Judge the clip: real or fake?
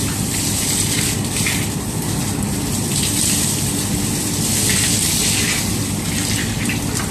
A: real